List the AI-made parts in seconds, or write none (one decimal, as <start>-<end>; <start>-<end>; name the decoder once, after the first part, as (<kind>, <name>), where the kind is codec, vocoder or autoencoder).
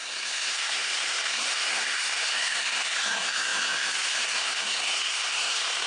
0.0-5.9 (codec, SNAC)